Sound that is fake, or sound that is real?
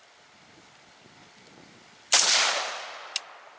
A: real